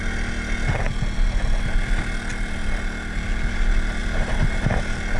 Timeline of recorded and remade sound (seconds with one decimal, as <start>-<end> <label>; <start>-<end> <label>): 0.0-4.0 recorded; 4.0-4.6 remade; 4.6-5.2 recorded